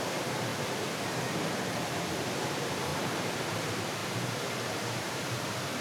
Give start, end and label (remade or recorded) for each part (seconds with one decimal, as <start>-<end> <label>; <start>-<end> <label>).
0.0-0.5 remade; 0.5-2.5 recorded; 2.5-5.8 remade

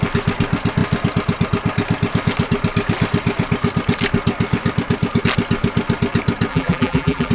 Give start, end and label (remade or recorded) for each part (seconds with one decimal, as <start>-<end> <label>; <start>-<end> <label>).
0.0-6.5 recorded; 6.5-7.3 remade

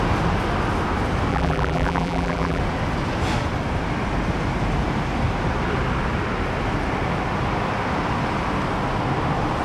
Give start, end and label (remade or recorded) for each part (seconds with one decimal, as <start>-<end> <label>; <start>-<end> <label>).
0.0-1.3 recorded; 1.3-2.6 remade; 2.6-9.6 recorded

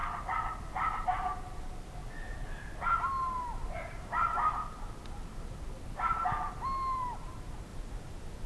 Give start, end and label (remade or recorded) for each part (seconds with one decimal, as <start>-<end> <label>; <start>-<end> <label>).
0.0-0.6 recorded; 0.6-2.0 remade; 2.0-6.4 recorded; 6.4-7.7 remade; 7.7-8.5 recorded

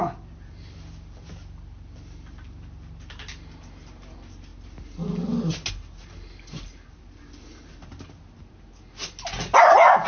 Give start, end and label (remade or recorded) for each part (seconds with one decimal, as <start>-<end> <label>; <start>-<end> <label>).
0.0-10.1 recorded

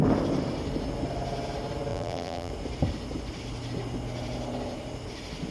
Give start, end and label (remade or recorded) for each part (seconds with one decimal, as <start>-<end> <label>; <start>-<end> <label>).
0.0-1.9 recorded; 1.9-2.5 remade; 2.5-5.5 recorded

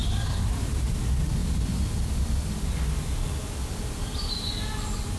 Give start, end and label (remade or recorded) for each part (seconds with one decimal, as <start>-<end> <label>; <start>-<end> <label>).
0.0-0.9 remade; 0.9-5.2 recorded